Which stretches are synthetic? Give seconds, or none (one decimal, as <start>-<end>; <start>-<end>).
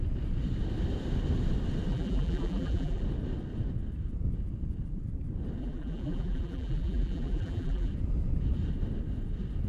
1.9-3.0; 5.6-7.9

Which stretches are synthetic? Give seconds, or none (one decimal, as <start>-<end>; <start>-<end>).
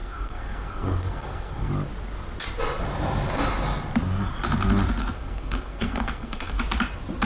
0.0-1.7; 5.0-6.6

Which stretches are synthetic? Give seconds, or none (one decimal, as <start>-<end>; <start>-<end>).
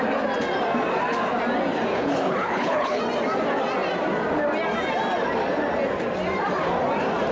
1.9-3.0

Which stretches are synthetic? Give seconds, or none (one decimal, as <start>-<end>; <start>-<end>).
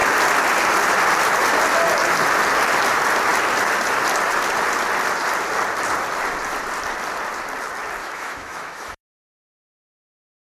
8.0-9.7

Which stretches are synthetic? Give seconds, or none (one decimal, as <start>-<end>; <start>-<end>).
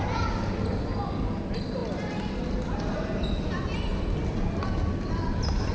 none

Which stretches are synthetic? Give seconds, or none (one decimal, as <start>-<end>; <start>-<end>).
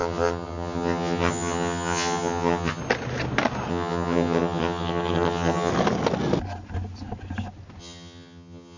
0.0-2.8; 3.7-5.7; 7.8-8.8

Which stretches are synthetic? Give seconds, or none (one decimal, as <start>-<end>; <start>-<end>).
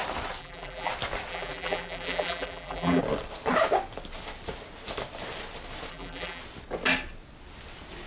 0.4-0.9; 1.3-3.0; 5.9-6.4